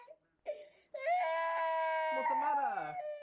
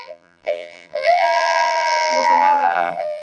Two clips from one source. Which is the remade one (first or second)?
second